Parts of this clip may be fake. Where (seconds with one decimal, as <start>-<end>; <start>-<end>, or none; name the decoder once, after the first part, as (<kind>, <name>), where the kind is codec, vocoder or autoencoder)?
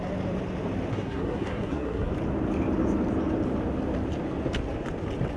0.9-2.1 (codec, SNAC)